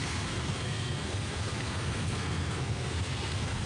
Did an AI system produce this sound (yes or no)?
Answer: yes